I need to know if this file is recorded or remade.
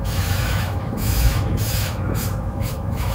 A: remade